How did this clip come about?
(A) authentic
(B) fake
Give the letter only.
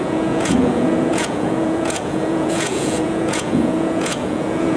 B